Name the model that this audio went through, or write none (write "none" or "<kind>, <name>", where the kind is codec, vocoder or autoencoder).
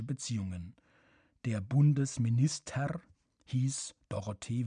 none